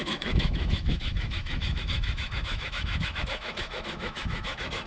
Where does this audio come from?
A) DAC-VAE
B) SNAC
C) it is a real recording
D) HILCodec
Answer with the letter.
A